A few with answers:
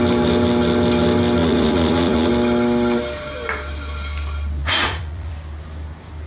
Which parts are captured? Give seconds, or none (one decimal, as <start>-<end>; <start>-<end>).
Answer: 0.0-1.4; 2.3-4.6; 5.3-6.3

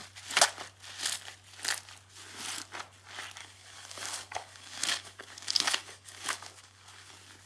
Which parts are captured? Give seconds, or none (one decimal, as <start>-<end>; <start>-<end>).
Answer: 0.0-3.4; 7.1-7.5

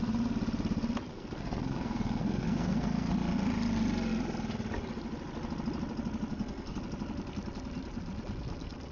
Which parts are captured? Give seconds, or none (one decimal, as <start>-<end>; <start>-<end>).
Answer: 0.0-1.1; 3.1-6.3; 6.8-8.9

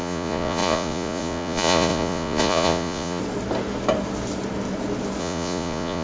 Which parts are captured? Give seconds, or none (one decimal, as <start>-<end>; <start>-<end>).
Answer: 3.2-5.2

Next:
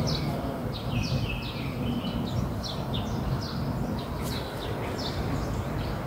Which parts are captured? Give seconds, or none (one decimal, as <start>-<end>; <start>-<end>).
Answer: 0.0-6.1

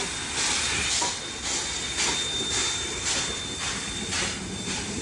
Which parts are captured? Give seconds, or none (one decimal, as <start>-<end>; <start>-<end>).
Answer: 0.0-5.0

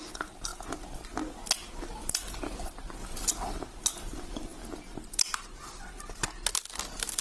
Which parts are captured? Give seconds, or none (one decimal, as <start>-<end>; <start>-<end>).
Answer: 0.0-7.2

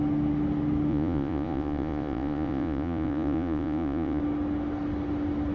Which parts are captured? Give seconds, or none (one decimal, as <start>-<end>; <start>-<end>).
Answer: 0.0-0.9; 4.2-5.5